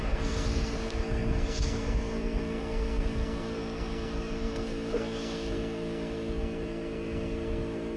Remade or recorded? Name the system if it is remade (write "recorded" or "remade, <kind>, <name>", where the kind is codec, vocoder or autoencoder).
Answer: remade, codec, SNAC